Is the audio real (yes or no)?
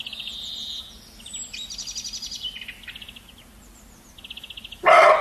yes